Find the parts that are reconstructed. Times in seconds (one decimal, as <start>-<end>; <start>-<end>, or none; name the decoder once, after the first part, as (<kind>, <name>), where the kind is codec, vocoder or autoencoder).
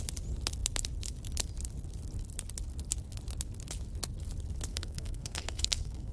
4.7-6.1 (codec, SNAC)